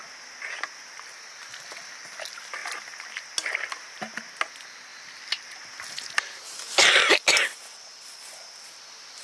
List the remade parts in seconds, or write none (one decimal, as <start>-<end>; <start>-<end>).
4.9-8.1